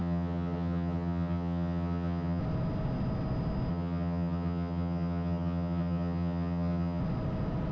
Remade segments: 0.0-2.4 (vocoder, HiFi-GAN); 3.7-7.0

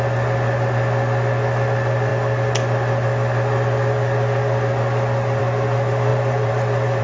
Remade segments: 6.1-7.0 (vocoder, BigVGAN v2)

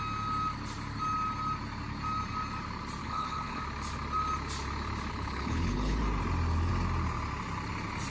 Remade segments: 3.0-3.6 (codec, HILCodec); 5.1-6.0